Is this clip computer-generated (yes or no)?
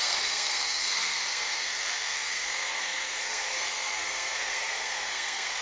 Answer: yes